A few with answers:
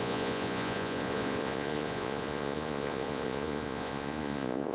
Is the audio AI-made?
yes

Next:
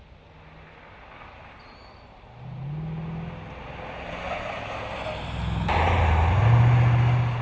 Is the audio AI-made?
no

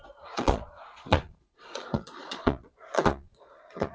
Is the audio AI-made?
yes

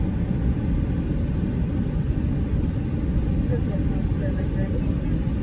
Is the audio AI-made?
no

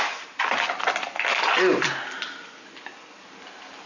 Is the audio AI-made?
no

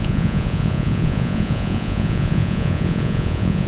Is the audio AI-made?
yes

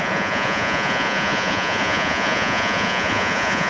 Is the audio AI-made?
yes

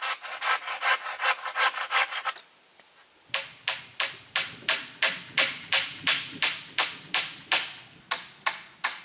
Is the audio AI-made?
no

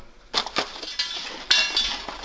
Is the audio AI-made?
no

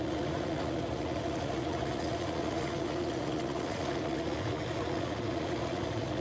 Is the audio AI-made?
yes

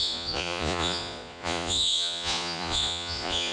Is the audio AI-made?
yes